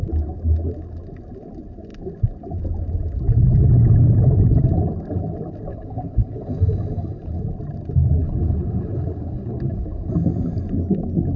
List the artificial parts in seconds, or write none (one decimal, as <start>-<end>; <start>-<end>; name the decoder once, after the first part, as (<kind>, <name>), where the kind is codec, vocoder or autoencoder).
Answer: 5.7-6.5 (codec, HILCodec); 8.2-10.1